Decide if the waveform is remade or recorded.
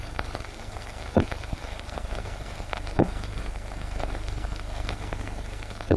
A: remade